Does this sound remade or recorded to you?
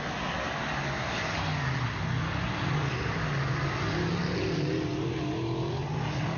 recorded